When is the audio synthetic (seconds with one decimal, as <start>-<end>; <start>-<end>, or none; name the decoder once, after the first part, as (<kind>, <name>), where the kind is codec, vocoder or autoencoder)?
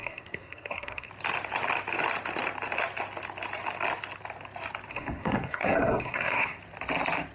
0.0-1.1 (codec, SNAC); 4.9-6.6